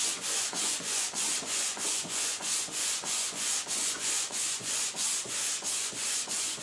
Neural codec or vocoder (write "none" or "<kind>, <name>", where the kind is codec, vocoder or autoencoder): vocoder, Vocos